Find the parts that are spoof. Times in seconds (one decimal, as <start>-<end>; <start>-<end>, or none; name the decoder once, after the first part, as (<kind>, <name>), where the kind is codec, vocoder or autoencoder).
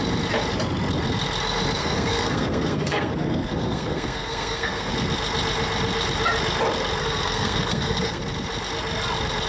1.8-4.9 (codec, SNAC); 7.0-8.2